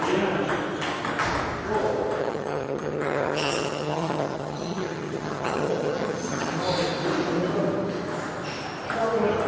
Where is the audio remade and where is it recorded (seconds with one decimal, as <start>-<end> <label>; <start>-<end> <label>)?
0.0-2.2 recorded; 2.2-6.5 remade; 6.5-9.5 recorded